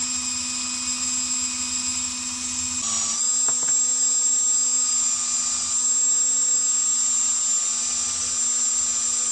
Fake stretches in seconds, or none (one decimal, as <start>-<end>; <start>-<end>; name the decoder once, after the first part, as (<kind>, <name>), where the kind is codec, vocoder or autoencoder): none